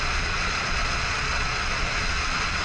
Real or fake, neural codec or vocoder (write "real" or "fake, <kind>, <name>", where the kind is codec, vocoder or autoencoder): fake, vocoder, Vocos